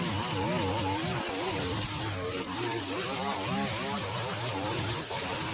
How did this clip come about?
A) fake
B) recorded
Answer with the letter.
A